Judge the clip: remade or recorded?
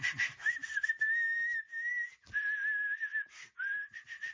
recorded